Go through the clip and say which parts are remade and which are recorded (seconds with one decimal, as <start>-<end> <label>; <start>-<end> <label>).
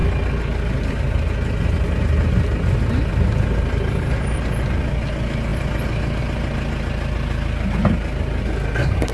0.0-9.1 recorded